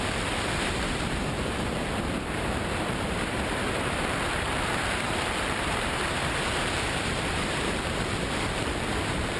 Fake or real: fake